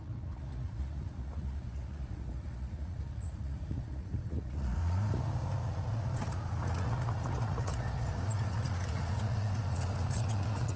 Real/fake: fake